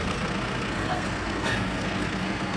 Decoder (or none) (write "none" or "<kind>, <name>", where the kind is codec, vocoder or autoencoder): codec, SNAC